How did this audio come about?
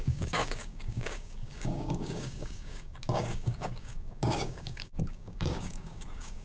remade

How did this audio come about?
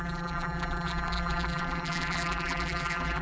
remade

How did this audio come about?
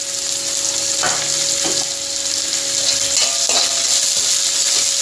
recorded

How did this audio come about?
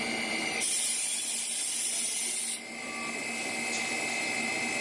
recorded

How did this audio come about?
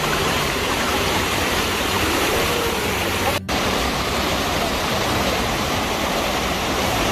remade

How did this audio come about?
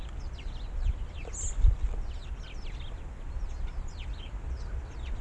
recorded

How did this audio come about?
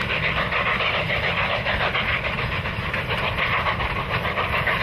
recorded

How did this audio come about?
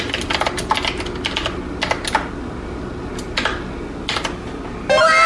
recorded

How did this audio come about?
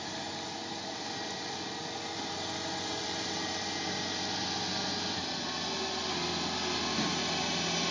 recorded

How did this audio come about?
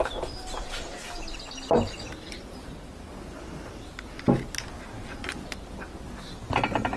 recorded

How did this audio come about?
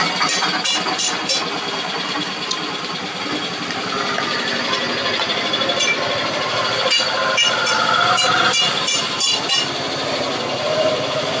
recorded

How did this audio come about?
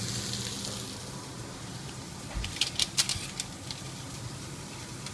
recorded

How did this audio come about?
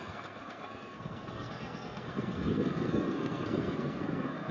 remade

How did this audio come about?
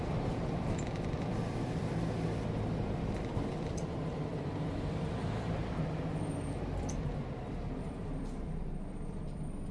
remade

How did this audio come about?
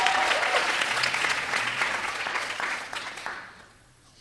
remade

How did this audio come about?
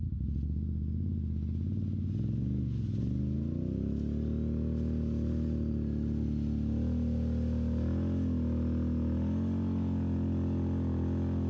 recorded